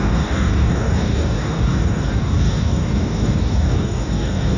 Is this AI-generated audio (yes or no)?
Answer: yes